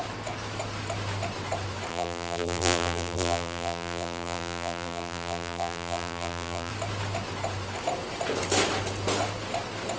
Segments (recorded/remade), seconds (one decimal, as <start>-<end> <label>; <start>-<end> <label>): 0.0-1.9 recorded; 1.9-6.7 remade; 6.7-10.0 recorded